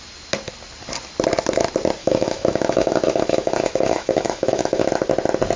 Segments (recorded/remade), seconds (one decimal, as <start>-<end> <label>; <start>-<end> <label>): 0.0-2.0 recorded; 2.0-4.9 remade; 4.9-5.6 recorded